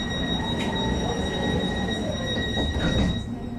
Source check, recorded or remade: remade